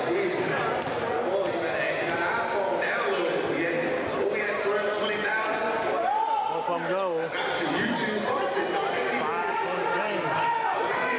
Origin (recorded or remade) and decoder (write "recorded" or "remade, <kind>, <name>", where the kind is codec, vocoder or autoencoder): recorded